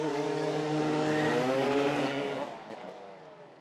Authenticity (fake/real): fake